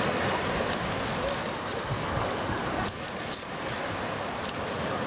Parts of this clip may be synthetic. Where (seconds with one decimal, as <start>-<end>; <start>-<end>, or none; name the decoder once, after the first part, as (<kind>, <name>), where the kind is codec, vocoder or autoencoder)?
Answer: none